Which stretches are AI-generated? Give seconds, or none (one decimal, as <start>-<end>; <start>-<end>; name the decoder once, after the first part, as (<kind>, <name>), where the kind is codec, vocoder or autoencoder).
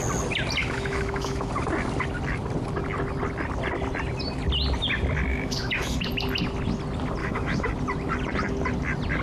0.6-1.5 (autoencoder, DAC-VAE); 5.3-6.1; 7.2-7.7